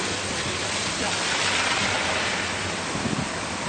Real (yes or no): yes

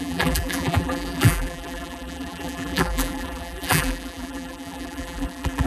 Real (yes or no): no